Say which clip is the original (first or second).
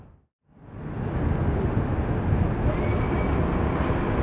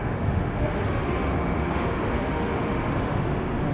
first